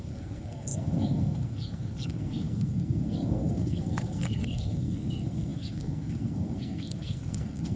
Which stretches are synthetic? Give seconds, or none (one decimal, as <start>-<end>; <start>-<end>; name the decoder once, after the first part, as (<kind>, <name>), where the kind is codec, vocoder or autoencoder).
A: 0.0-7.8 (codec, SNAC)